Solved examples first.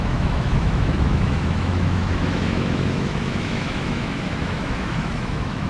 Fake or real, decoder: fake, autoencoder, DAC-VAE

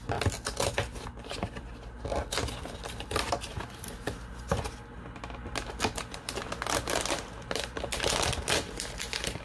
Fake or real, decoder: real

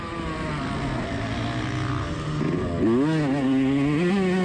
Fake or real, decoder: real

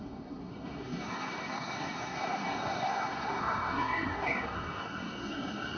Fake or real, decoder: fake, codec, SNAC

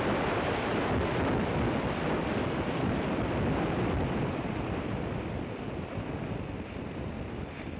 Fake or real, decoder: real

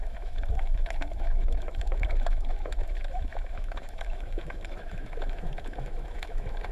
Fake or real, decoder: fake, autoencoder, DAC-VAE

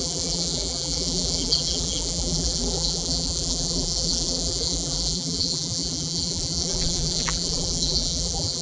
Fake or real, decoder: fake, vocoder, BigVGAN v2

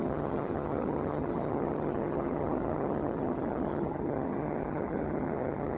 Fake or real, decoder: fake, vocoder, HiFi-GAN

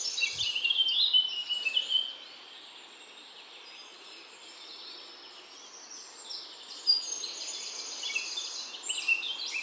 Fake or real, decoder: real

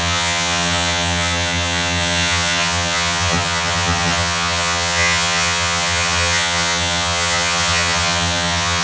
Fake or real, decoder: fake, vocoder, HiFi-GAN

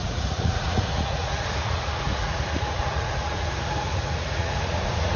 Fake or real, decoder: fake, vocoder, Vocos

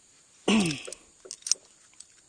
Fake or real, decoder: real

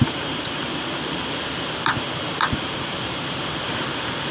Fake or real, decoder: fake, vocoder, BigVGAN v2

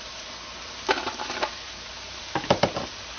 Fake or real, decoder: real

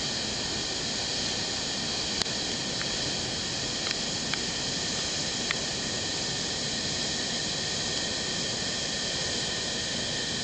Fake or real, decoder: real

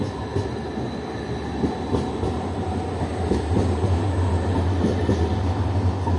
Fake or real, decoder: real